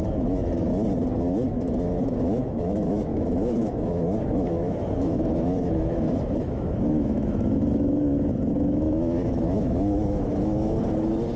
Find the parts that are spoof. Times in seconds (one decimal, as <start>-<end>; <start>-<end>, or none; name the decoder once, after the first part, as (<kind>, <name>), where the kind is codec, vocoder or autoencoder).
0.0-0.7 (autoencoder, DAC-VAE); 1.5-11.4